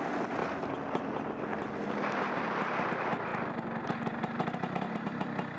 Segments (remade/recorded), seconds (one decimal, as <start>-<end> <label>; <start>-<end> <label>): 0.0-5.6 recorded